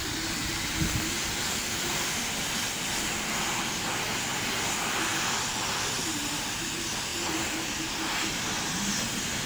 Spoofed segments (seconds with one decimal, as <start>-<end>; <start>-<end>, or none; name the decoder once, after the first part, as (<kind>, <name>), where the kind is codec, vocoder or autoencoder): 0.4-3.9 (vocoder, BigVGAN v2); 5.1-6.1